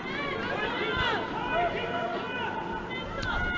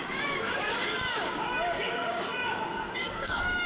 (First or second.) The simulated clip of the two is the second